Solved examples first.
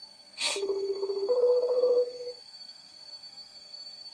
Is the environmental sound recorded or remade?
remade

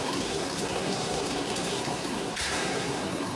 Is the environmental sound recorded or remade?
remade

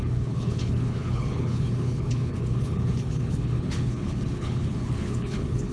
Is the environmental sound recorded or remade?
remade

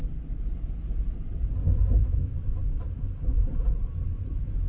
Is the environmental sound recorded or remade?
remade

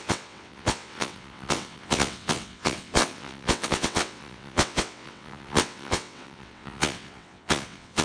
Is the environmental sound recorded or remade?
remade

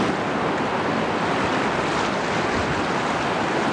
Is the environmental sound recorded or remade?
recorded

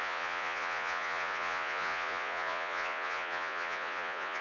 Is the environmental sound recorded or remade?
remade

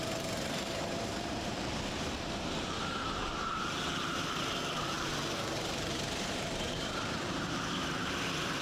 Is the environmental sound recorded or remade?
remade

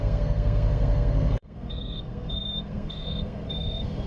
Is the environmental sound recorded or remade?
remade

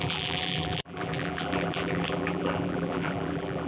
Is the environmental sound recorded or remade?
remade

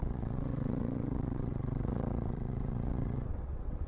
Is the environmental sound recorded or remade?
remade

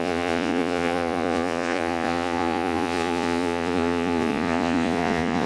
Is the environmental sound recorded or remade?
remade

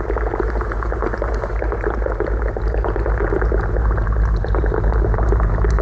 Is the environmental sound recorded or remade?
recorded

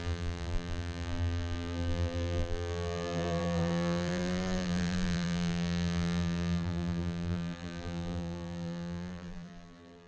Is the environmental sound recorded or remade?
remade